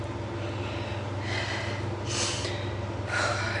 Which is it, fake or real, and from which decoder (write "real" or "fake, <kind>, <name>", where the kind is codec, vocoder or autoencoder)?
real